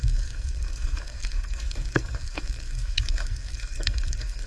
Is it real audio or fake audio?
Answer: fake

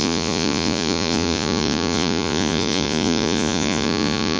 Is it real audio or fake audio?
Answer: fake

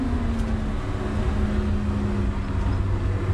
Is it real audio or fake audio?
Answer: real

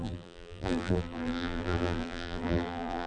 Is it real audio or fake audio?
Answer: fake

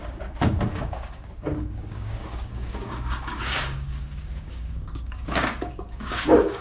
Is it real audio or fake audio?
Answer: fake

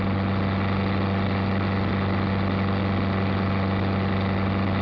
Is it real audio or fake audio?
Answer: real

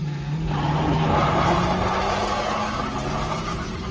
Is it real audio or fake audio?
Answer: real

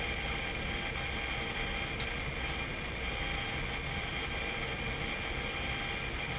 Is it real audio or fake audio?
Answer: real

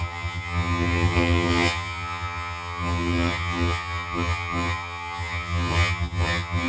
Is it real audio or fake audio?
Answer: fake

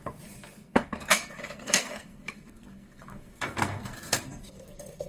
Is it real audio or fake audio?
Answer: fake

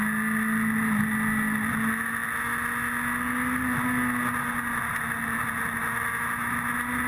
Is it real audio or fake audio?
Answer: real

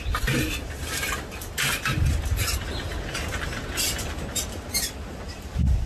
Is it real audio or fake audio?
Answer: real